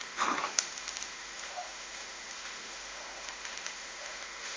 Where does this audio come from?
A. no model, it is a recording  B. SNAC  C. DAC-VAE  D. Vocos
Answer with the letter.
C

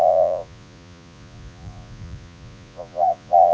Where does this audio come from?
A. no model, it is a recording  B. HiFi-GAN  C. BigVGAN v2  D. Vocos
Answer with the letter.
D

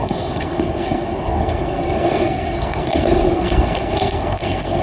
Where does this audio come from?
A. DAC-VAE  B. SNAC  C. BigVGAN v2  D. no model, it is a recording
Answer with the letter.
B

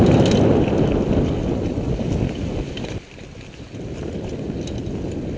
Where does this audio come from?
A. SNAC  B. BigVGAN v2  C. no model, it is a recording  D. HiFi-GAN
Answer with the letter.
C